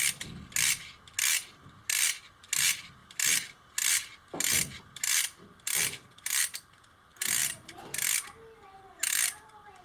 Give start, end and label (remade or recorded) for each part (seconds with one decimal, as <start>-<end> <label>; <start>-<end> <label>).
0.0-9.8 recorded